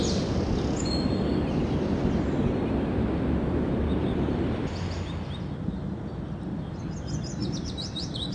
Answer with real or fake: real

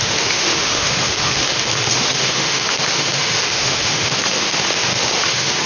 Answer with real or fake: fake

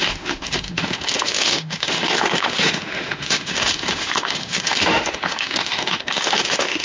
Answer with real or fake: fake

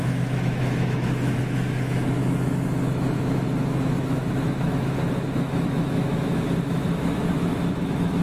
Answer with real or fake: fake